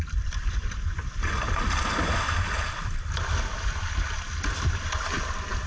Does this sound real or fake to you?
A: fake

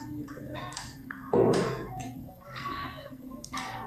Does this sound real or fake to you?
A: fake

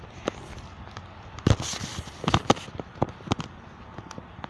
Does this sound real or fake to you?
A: real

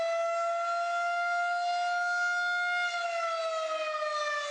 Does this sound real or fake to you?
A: real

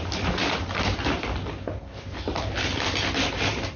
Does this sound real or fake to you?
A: real